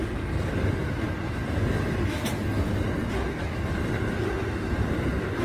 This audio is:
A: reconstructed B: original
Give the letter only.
B